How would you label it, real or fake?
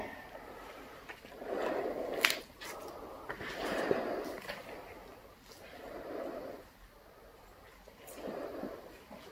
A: real